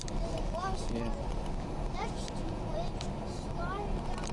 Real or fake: real